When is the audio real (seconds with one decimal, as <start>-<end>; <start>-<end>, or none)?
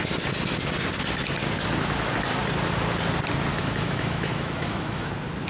0.0-3.5; 5.1-5.5